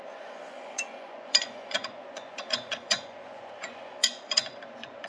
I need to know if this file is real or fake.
fake